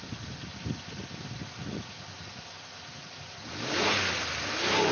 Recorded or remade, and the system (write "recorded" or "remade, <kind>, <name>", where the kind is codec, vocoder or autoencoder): recorded